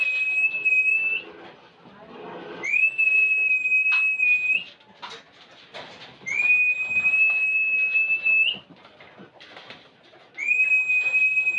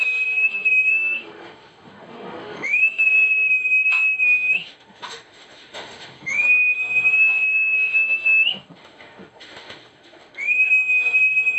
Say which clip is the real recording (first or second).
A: first